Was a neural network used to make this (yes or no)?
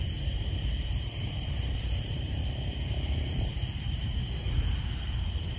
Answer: yes